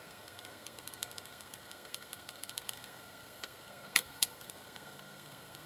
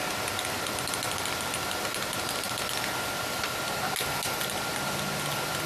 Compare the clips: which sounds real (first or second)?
second